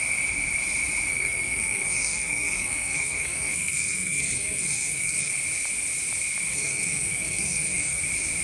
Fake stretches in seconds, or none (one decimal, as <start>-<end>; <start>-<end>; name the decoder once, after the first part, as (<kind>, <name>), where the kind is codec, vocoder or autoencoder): 1.1-5.3 (codec, SNAC); 6.5-8.0